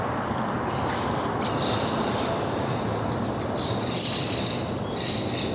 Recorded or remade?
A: recorded